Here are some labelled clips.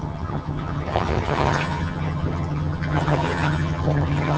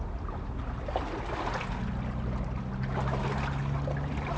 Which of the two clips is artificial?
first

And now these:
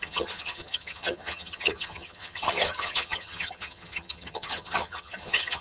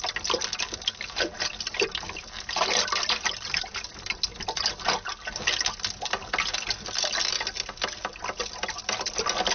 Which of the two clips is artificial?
first